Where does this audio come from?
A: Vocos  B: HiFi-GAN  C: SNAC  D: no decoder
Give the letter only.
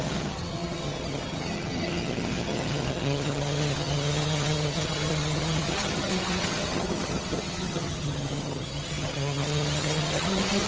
B